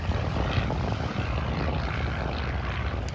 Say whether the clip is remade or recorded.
recorded